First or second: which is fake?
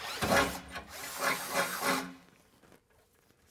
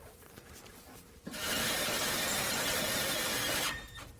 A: second